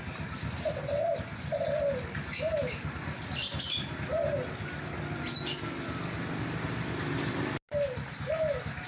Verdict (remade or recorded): recorded